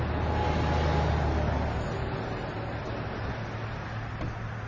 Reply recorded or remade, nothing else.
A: recorded